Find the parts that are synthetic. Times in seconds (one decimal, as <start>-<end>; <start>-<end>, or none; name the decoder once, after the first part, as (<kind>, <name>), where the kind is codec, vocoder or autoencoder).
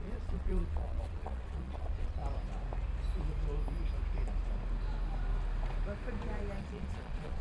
0.0-2.2 (vocoder, Vocos); 6.6-7.4